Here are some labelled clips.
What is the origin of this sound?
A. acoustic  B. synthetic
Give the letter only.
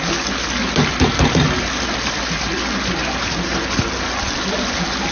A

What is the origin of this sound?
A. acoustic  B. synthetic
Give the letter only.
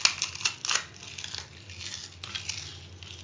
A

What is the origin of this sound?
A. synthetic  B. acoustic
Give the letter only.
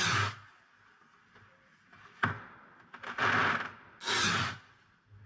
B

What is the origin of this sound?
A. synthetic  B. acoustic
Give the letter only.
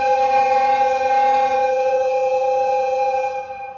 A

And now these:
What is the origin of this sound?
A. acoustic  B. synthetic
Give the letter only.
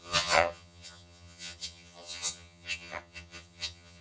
B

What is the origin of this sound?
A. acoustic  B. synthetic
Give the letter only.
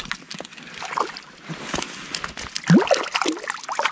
A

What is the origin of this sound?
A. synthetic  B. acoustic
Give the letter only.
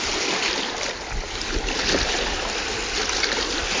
B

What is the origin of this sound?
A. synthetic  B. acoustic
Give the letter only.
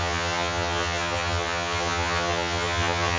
A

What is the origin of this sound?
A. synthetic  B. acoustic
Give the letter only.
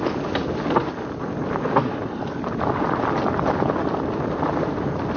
B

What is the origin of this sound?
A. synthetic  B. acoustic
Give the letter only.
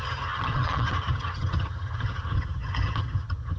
A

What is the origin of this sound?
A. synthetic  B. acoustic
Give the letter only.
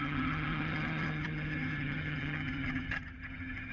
A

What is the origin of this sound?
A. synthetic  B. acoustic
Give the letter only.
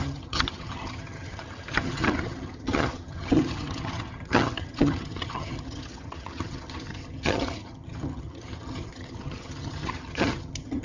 A